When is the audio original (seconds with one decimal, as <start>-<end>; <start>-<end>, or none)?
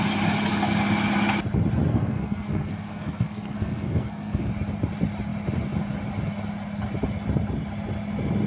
0.0-1.9; 4.5-8.5